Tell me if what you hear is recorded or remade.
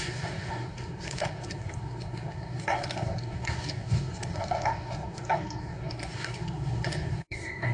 remade